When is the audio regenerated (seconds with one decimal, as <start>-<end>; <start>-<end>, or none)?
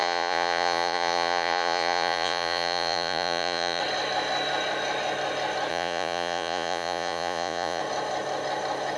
0.0-3.8; 5.7-7.8